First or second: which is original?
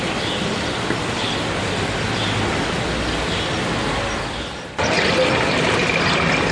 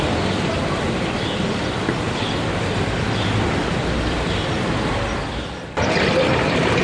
first